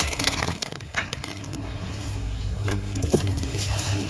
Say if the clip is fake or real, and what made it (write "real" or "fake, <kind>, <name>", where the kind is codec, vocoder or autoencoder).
fake, codec, SNAC